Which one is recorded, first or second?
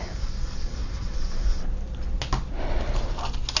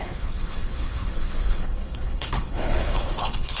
first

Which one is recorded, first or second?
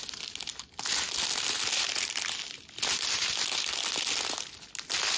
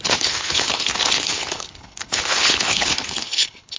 first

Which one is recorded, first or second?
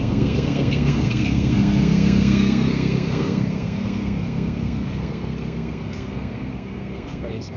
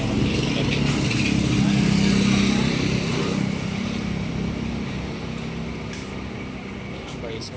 second